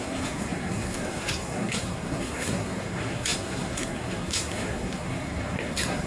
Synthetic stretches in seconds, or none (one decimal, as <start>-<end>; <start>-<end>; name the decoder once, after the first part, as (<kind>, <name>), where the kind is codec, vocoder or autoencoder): 0.0-6.1 (codec, SNAC)